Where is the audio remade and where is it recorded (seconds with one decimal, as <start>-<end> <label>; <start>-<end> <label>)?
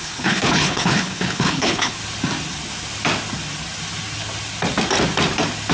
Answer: 0.0-2.0 remade; 2.0-5.7 recorded